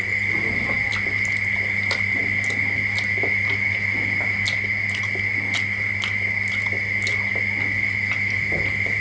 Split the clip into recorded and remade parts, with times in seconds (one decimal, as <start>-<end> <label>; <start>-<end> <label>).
0.0-9.0 recorded